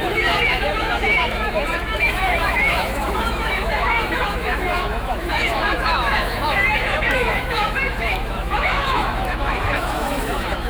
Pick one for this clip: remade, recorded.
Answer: remade